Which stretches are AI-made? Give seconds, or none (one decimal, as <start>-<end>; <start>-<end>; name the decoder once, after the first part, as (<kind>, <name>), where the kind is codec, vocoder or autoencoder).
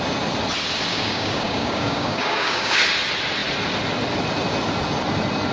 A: 0.9-2.8 (codec, DAC)